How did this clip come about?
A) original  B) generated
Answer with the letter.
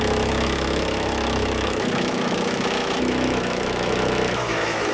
B